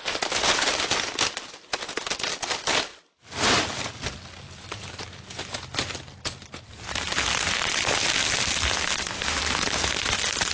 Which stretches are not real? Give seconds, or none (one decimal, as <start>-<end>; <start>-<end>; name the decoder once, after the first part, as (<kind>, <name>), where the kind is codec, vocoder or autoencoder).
none